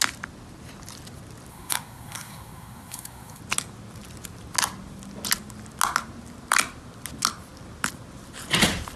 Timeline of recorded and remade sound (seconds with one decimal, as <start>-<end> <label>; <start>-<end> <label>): 0.0-1.5 recorded; 1.5-3.4 remade; 3.4-9.0 recorded